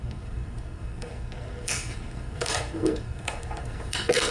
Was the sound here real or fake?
fake